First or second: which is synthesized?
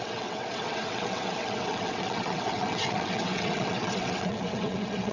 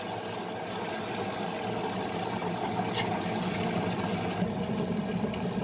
first